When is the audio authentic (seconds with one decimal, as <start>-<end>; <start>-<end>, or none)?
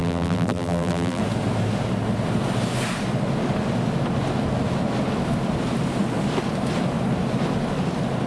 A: 1.2-8.3